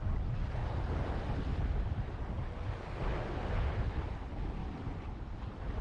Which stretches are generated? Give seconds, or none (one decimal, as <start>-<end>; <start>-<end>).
4.6-5.8